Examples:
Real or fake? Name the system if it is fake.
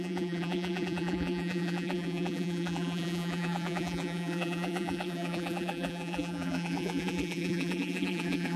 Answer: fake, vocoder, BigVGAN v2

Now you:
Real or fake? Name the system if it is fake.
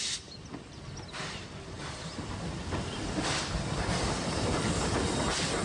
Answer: real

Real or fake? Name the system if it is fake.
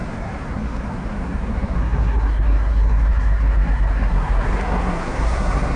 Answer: fake, codec, SNAC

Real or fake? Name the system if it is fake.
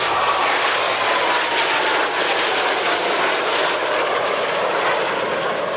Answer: real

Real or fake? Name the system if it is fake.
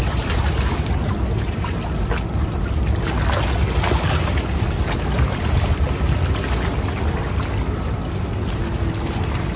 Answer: real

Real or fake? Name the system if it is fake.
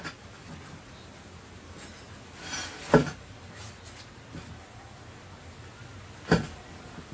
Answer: real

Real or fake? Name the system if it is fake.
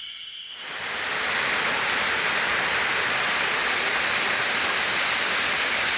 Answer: real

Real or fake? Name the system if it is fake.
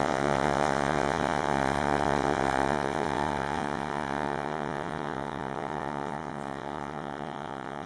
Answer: fake, vocoder, WaveNeXt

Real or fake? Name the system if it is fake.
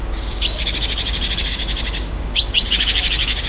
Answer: fake, codec, DAC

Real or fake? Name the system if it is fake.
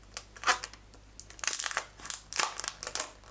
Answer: real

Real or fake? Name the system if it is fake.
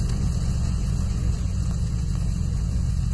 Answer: fake, vocoder, Vocos